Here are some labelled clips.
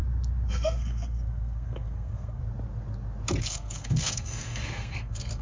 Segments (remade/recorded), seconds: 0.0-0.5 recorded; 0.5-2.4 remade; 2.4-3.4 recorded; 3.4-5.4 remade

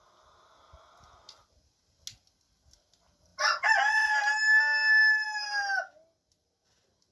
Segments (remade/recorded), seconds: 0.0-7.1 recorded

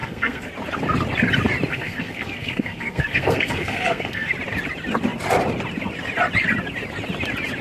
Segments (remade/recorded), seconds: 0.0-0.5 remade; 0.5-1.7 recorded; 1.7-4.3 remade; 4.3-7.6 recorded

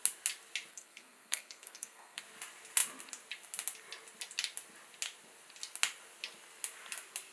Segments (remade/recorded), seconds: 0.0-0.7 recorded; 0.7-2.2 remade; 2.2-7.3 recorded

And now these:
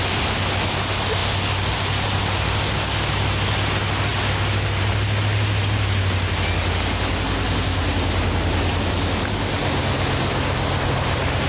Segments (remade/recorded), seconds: 0.0-11.5 recorded